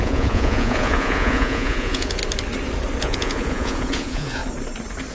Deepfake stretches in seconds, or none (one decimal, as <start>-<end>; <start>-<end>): 0.0-2.2; 3.0-4.4